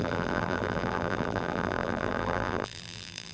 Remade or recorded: remade